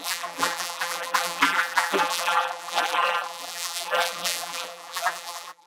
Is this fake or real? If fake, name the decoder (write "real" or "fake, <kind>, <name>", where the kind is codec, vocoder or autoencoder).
fake, vocoder, BigVGAN v2